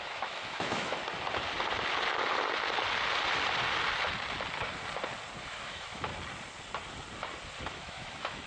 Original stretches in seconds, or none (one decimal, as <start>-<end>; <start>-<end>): 1.0-5.4; 6.1-7.6